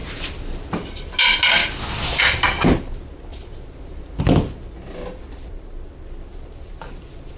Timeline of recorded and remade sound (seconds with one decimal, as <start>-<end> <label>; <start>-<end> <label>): 0.0-3.3 recorded; 3.3-4.2 remade; 4.2-7.4 recorded